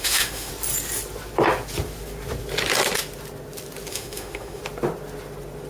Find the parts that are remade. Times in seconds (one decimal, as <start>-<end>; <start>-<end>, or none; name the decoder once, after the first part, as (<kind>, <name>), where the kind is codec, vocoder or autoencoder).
0.0-0.5 (autoencoder, DAC-VAE); 3.9-4.6